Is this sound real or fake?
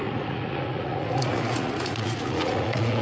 fake